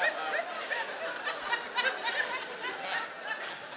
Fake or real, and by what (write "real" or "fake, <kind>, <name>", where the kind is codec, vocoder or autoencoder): real